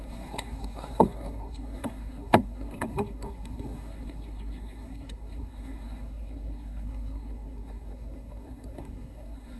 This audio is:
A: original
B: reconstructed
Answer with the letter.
B